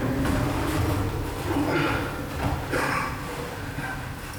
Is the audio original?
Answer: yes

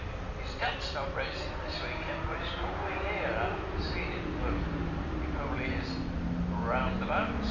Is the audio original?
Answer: yes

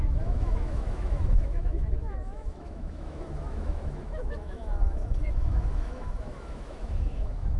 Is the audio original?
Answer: no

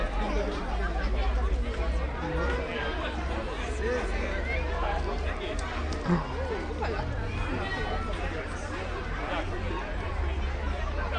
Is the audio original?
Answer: yes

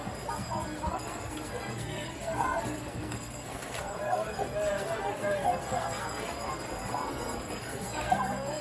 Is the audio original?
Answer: no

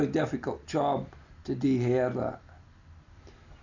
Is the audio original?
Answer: yes